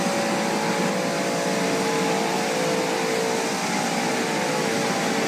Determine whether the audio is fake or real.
real